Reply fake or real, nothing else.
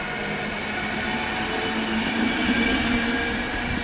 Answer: real